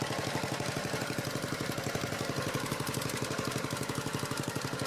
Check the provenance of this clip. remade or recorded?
recorded